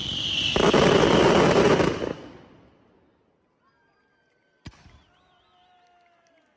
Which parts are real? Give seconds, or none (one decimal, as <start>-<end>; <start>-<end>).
0.0-6.6